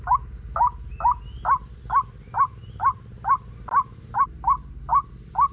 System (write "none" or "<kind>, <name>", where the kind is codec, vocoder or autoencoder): none